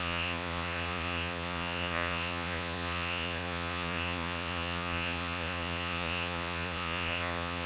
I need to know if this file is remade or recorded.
remade